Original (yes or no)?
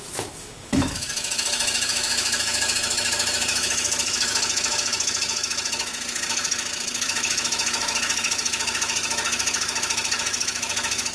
no